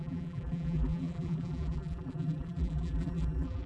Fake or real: fake